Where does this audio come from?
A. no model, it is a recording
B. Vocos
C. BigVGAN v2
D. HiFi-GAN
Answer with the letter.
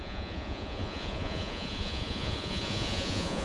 B